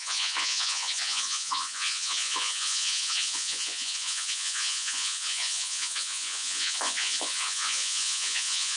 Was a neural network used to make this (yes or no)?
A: yes